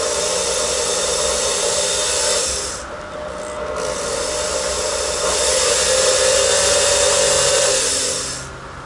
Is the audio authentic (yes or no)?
yes